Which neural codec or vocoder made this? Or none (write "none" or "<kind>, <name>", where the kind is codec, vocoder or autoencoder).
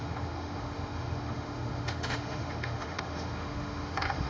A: autoencoder, DAC-VAE